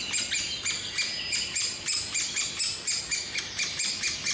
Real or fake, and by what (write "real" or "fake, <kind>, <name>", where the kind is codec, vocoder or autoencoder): real